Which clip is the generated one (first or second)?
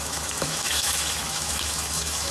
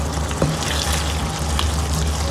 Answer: first